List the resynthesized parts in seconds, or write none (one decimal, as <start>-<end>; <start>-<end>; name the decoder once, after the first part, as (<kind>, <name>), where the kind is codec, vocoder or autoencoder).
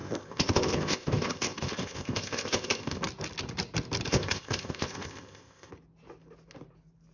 0.0-3.0 (codec, ZipCodec); 4.1-5.7